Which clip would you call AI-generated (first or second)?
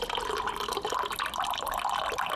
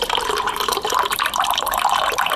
second